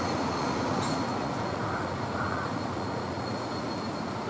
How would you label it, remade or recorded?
remade